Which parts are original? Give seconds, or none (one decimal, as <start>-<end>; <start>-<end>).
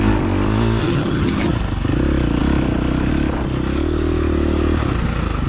0.0-0.8; 1.5-5.5